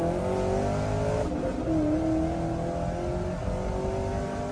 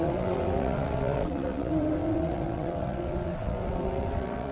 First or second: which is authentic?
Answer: first